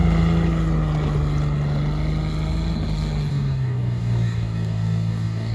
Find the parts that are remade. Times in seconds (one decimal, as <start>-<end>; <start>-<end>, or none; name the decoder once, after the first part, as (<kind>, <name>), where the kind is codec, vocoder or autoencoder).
3.3-5.5 (codec, DAC)

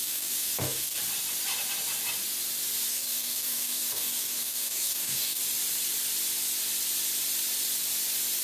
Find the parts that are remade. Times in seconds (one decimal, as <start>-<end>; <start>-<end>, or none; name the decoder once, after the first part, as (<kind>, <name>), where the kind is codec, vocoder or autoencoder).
0.0-1.0 (codec, DAC); 2.9-5.4

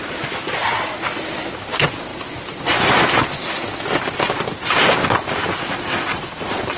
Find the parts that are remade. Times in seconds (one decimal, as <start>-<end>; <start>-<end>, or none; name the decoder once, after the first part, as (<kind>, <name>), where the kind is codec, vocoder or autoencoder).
none

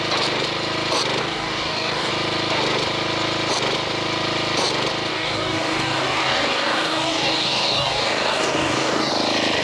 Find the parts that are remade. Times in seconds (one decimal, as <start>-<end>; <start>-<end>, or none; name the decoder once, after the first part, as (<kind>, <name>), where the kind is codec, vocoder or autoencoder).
1.2-2.1 (codec, DAC); 5.1-9.1